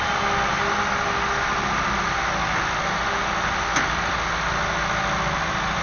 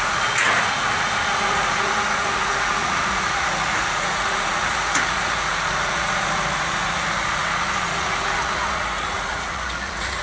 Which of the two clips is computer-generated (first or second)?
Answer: second